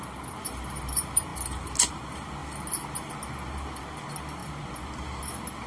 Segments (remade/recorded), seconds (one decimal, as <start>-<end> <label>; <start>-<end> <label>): 0.0-5.7 recorded